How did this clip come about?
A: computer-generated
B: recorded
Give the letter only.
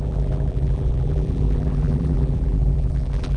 A